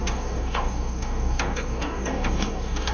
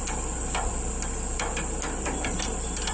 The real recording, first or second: second